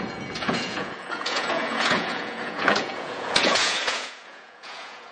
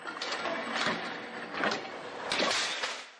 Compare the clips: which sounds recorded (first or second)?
second